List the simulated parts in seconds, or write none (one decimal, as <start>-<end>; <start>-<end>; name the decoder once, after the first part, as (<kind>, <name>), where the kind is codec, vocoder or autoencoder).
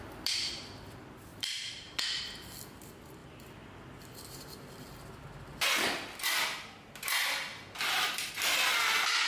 1.3-1.9 (vocoder, BigVGAN v2)